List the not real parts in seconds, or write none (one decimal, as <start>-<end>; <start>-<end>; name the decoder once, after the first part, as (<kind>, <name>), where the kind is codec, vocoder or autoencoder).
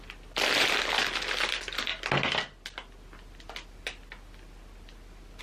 none